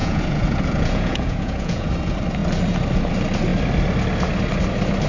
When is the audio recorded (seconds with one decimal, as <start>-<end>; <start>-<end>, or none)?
1.9-5.1